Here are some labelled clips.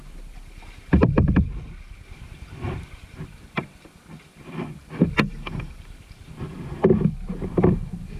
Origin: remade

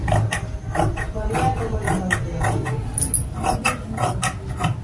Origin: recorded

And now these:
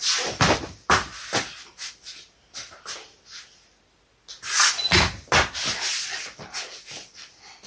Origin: recorded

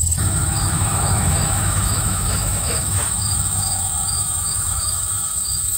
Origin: remade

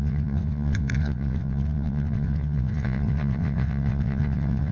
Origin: remade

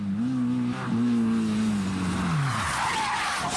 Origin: recorded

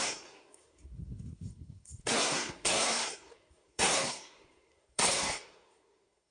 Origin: remade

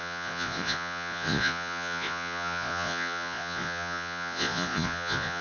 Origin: remade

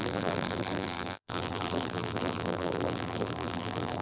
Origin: remade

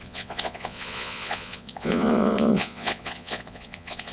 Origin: remade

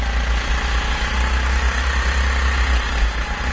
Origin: recorded